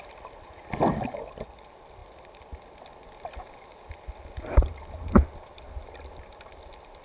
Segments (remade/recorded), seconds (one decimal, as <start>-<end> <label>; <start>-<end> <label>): 0.0-7.0 recorded